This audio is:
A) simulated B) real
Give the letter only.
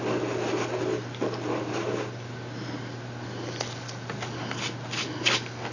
B